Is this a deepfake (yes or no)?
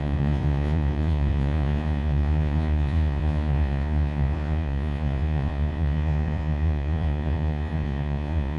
yes